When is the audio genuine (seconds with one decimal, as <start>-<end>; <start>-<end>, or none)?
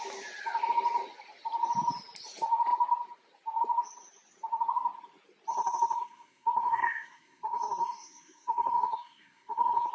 0.0-5.5